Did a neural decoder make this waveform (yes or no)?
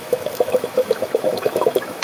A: yes